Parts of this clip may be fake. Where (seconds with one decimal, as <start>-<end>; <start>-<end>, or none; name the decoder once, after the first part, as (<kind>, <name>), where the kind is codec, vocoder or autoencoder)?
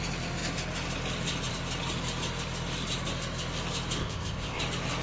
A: 4.0-4.6 (codec, ZipCodec)